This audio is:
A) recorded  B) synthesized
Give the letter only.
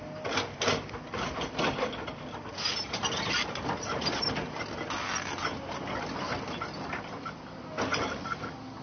A